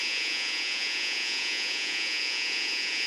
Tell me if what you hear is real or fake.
fake